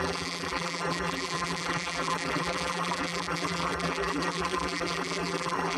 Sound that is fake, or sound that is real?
fake